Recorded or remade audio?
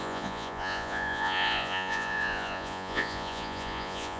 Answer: remade